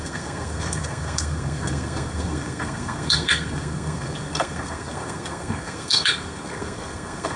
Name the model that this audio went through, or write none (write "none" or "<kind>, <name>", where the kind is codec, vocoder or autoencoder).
codec, SNAC